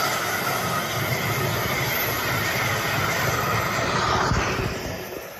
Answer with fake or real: real